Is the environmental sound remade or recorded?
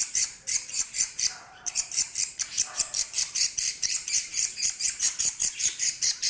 remade